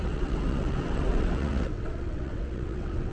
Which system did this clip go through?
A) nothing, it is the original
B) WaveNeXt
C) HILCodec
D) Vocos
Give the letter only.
B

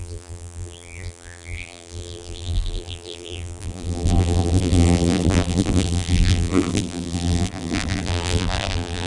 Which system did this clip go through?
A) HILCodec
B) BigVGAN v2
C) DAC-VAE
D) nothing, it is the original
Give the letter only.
B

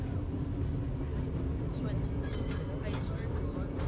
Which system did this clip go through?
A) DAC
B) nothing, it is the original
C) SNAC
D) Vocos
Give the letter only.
B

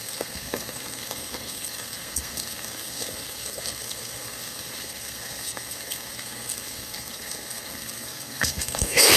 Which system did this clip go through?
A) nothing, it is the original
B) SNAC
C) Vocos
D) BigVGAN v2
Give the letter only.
B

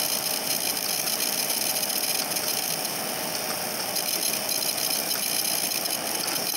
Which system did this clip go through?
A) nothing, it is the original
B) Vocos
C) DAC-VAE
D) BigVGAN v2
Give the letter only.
D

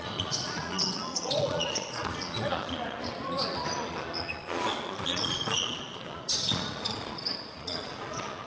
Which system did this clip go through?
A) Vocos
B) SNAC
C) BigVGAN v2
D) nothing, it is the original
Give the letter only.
A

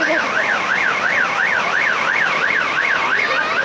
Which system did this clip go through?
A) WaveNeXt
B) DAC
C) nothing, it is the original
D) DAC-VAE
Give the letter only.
C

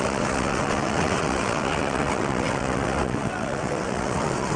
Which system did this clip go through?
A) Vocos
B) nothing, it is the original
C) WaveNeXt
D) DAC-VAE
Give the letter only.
C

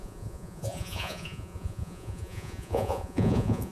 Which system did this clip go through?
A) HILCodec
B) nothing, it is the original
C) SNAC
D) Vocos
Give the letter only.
D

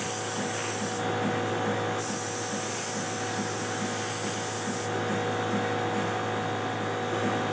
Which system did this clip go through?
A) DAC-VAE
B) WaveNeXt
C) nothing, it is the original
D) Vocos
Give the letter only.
C